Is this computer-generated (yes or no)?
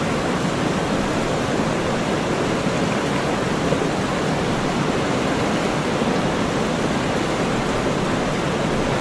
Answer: no